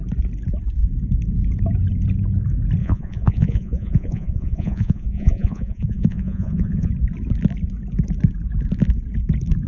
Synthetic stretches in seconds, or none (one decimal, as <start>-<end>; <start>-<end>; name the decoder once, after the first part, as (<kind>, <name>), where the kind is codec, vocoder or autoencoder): 2.8-6.9 (vocoder, Vocos)